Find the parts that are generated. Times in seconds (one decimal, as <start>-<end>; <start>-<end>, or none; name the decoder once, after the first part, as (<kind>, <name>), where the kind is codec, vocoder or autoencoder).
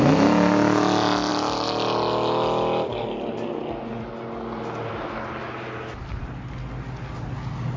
none